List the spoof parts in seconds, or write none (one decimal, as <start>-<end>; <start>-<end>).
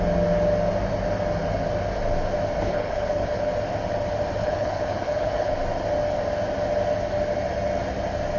2.7-3.5; 4.4-5.5